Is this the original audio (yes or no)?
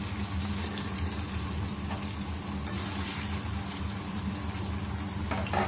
yes